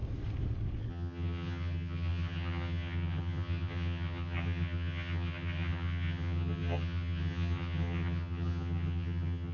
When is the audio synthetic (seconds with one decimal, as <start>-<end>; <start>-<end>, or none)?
0.9-9.5